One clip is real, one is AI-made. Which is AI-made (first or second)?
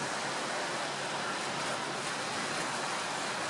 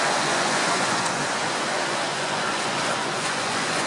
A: second